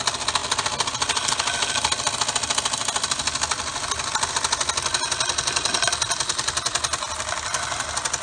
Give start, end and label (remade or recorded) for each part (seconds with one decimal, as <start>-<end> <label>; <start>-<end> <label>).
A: 0.0-8.2 recorded